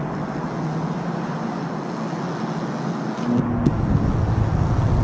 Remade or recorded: recorded